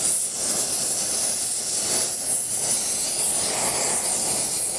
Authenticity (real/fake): real